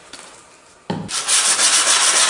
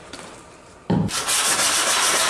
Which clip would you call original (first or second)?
first